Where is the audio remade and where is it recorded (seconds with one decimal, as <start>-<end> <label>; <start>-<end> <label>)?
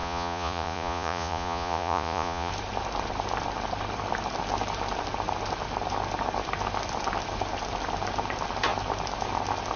0.0-2.5 remade; 2.5-9.8 recorded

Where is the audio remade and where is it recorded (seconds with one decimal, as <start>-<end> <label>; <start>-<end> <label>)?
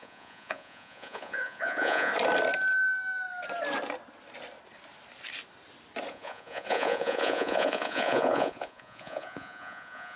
0.0-2.1 remade; 2.1-6.1 recorded; 6.1-10.2 remade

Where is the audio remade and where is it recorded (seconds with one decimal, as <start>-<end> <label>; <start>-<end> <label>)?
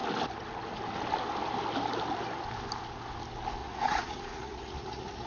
0.0-3.6 recorded; 3.6-5.3 remade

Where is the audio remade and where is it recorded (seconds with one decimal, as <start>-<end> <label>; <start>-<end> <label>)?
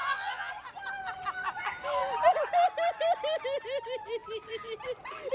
0.0-0.5 remade; 0.5-5.3 recorded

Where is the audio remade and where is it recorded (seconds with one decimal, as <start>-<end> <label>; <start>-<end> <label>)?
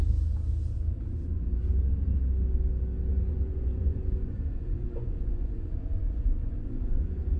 0.0-3.1 recorded; 3.1-7.4 remade